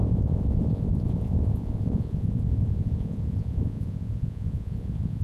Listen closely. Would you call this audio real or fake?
fake